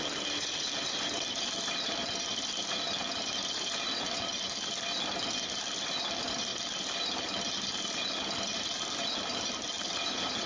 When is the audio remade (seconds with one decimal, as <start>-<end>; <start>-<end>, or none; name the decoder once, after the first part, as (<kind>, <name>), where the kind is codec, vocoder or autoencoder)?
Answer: none